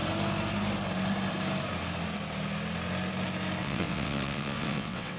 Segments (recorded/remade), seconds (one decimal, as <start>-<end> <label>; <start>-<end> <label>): 0.0-3.6 recorded; 3.6-5.2 remade